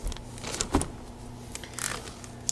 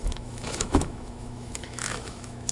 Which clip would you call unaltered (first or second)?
first